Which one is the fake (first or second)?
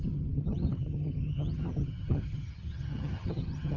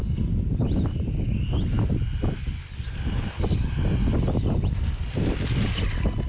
first